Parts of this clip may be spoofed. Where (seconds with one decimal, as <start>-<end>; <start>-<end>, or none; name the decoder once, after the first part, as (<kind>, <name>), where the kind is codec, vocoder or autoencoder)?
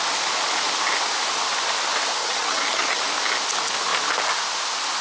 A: 2.2-3.0 (vocoder, HiFi-GAN)